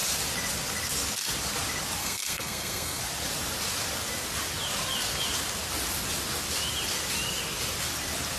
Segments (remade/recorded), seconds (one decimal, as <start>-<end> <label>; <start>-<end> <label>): 0.0-2.0 recorded; 2.0-3.0 remade; 3.0-8.4 recorded